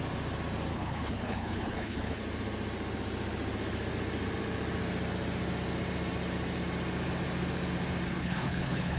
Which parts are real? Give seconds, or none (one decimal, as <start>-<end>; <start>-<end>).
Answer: 0.0-0.7; 2.2-8.1